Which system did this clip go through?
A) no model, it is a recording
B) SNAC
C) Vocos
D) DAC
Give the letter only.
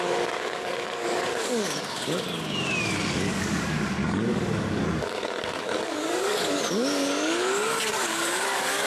D